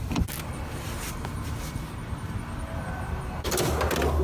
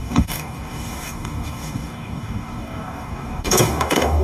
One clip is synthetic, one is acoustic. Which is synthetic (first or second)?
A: second